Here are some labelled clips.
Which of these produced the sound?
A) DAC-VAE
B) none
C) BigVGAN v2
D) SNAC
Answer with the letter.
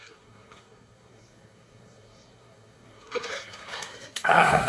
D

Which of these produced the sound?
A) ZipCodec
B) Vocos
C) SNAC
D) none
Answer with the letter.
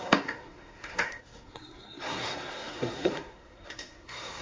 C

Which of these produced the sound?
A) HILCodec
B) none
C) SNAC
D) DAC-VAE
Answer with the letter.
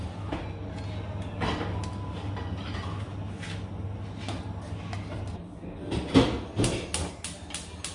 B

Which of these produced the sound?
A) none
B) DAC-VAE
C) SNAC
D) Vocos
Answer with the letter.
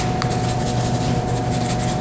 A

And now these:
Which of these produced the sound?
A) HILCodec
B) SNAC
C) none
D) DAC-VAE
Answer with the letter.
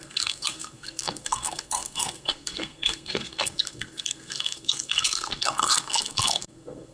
B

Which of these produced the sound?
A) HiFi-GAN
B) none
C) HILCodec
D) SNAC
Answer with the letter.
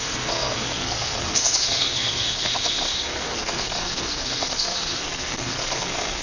D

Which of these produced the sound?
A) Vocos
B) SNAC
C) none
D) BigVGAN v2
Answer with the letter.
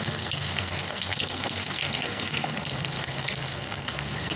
B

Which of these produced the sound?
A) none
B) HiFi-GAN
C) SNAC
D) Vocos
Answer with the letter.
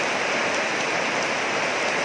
A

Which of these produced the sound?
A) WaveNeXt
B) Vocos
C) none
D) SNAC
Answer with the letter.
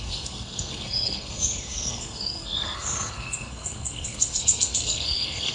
D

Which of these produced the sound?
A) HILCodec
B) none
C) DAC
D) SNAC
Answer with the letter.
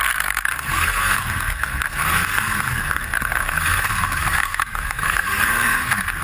D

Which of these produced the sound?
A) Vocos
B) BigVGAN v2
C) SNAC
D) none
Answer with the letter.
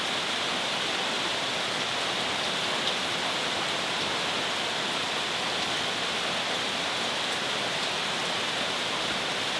D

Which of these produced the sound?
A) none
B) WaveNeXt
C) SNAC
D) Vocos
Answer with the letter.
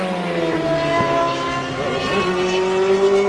A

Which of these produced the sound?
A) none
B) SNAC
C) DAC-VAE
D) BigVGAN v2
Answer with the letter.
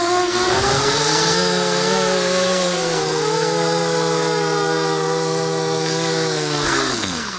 B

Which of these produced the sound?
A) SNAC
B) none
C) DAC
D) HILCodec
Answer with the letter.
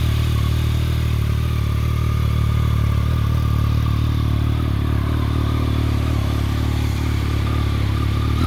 B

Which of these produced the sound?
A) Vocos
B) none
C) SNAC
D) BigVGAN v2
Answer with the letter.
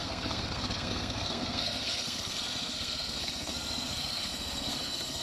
C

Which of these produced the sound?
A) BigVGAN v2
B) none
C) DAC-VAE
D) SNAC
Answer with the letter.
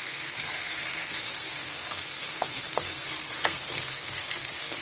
D